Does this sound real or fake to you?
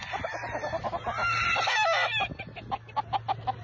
real